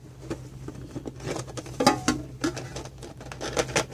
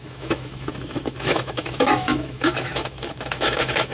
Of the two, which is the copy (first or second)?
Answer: second